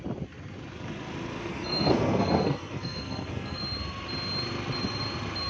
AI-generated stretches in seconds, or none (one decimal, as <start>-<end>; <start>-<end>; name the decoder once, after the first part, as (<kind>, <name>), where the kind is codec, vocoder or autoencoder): 1.5-3.6 (codec, SNAC)